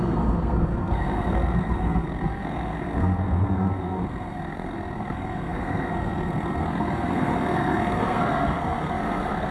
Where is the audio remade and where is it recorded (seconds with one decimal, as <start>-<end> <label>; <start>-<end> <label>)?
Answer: 0.0-9.5 remade

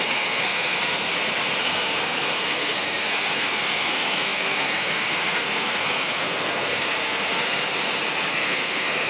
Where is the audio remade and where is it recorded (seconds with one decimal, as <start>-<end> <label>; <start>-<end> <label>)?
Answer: 0.0-1.1 remade; 1.1-1.6 recorded; 1.6-7.6 remade; 7.6-8.3 recorded; 8.3-9.1 remade

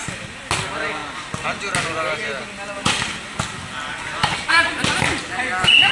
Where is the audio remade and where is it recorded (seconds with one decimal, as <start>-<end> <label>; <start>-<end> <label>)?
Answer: 0.0-5.9 recorded

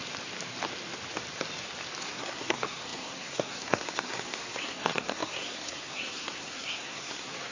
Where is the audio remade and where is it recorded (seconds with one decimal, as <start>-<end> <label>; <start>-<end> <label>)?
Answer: 0.0-2.0 recorded; 2.0-7.5 remade

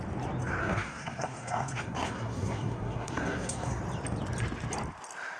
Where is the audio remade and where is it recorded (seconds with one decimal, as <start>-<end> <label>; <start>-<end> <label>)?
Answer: 0.0-0.6 recorded; 0.6-3.8 remade; 3.8-5.4 recorded

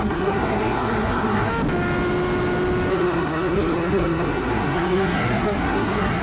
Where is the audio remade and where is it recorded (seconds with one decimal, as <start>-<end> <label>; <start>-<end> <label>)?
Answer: 0.0-1.5 remade; 1.5-2.9 recorded; 2.9-6.2 remade

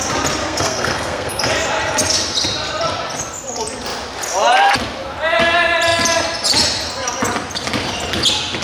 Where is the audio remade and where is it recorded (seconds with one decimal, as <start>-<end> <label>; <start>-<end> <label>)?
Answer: 0.0-0.4 recorded; 0.4-1.4 remade; 1.4-8.6 recorded

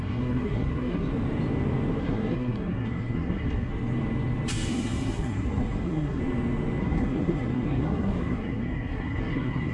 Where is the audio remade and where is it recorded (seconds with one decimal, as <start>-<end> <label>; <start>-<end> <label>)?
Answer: 0.0-1.1 remade; 1.1-2.0 recorded; 2.0-3.7 remade; 3.7-4.7 recorded; 4.7-6.2 remade; 6.2-6.8 recorded; 6.8-9.7 remade